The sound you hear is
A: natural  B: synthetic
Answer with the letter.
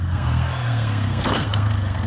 B